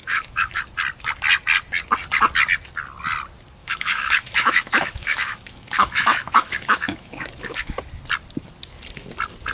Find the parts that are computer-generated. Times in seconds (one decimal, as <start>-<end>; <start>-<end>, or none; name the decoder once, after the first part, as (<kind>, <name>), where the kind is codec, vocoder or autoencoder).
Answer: 0.0-0.6 (autoencoder, DAC-VAE); 3.6-7.7